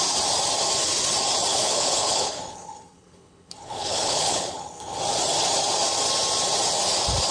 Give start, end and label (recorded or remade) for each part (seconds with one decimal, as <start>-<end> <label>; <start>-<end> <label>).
0.0-1.5 recorded; 1.5-5.0 remade; 5.0-7.3 recorded